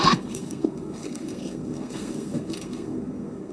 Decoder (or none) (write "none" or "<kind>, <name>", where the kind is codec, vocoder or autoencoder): codec, SNAC